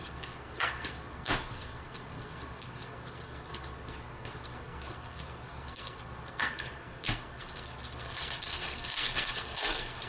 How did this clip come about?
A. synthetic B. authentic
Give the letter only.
A